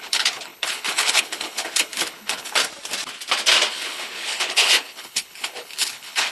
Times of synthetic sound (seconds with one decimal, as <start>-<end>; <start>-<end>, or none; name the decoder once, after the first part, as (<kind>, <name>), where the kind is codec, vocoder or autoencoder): 0.0-2.6 (codec, HILCodec); 3.7-6.3